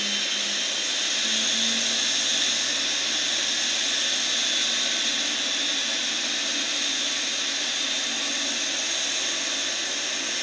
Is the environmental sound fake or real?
real